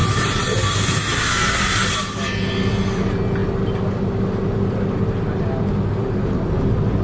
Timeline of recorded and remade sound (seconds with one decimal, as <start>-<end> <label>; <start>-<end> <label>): 0.0-2.5 remade; 2.5-7.0 recorded